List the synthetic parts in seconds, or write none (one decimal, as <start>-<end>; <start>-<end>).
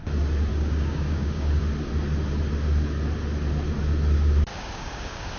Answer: 0.5-1.6; 4.5-5.4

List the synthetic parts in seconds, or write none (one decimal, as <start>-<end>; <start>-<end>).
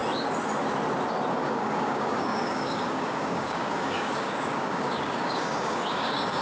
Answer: 1.3-6.4